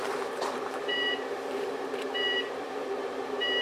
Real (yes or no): no